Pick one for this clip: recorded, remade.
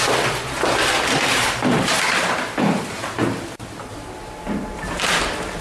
recorded